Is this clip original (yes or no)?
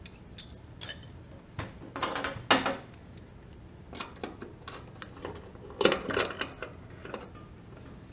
yes